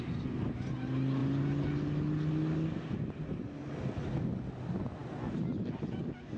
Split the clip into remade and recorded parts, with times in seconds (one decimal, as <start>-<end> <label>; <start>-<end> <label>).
0.0-6.4 recorded